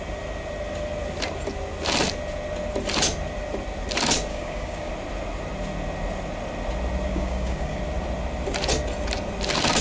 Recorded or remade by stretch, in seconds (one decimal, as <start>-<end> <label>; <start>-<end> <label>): 0.0-4.3 recorded; 4.3-4.9 remade; 4.9-7.1 recorded; 7.1-7.8 remade; 7.8-9.8 recorded